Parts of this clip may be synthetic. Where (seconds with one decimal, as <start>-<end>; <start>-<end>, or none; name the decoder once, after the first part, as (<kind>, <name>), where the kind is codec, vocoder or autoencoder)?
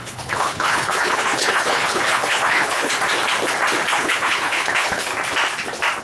0.0-2.9 (codec, HILCodec); 3.9-5.1